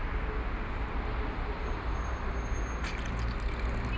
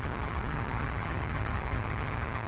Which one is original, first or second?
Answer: first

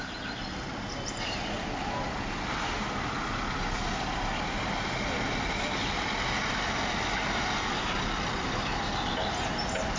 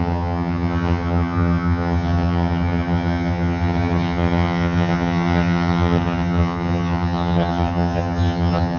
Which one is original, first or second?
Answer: first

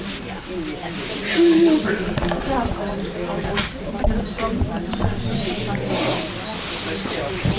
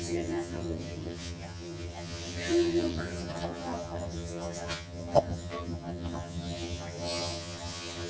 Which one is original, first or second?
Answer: first